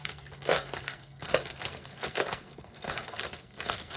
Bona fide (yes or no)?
no